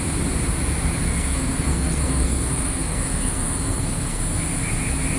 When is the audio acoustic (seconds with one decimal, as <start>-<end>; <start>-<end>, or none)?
0.0-1.1; 4.2-5.2